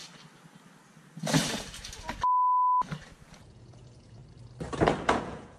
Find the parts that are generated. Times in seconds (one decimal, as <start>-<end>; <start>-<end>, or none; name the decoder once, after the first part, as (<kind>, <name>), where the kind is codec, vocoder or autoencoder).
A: 3.4-4.2 (vocoder, Vocos); 5.1-5.6